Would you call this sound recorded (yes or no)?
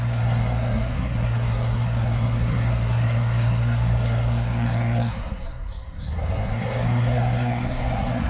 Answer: no